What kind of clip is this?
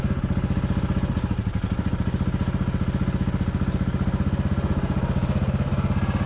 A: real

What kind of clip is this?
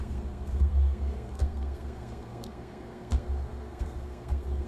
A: fake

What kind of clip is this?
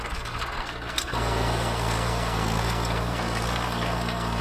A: fake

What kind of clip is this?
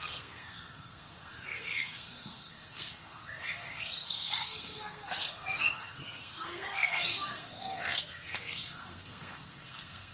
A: fake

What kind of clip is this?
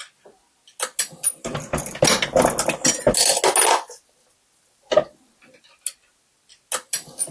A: real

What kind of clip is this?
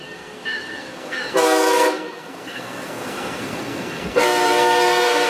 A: fake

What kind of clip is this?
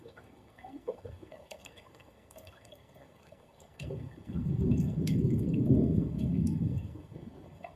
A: fake